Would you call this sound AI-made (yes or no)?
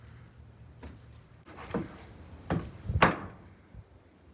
yes